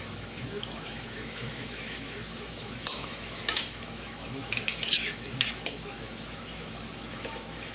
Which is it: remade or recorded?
remade